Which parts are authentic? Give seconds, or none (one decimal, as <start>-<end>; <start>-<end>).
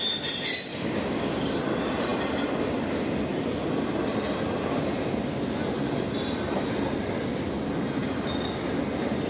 0.0-0.7; 1.4-9.3